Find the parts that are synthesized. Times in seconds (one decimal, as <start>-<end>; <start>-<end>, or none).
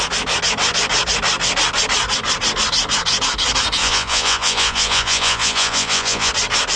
3.8-6.3